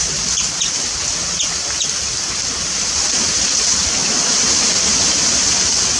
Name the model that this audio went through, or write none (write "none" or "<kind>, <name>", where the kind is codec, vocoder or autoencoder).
none